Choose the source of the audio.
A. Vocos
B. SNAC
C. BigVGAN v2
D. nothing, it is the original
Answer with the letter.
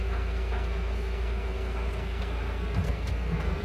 B